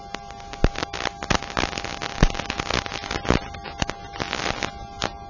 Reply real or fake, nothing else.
real